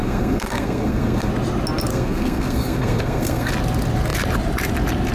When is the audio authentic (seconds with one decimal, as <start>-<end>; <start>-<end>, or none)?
1.3-1.9; 3.5-5.1

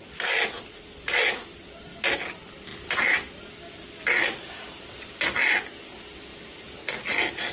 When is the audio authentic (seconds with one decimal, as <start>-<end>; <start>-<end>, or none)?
0.0-7.5

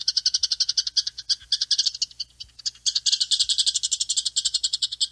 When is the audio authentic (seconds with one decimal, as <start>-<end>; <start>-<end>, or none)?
0.0-5.1

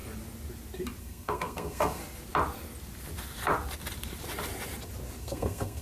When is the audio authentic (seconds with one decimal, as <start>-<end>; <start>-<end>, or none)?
0.0-1.0; 2.0-5.2

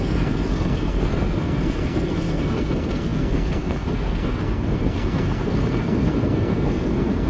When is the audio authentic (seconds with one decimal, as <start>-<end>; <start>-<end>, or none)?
none

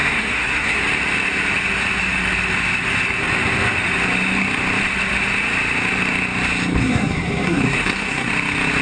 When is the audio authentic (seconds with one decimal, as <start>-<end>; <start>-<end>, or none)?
0.8-6.8; 8.3-8.8

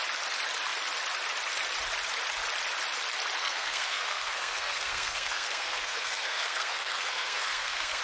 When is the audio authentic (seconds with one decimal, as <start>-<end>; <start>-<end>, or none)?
0.0-3.4